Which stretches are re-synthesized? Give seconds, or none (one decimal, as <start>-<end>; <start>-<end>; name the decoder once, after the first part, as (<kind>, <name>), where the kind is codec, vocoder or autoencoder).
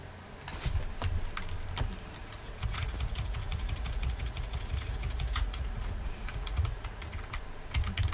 2.2-7.1 (vocoder, Vocos)